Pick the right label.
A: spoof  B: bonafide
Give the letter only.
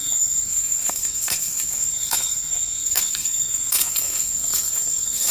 A